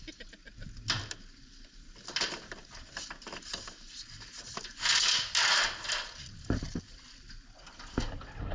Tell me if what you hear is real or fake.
real